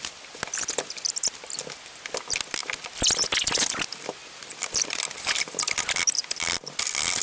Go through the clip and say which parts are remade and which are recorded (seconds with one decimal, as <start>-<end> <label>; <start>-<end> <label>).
0.0-7.2 recorded